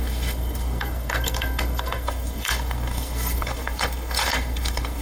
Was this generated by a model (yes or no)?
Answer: yes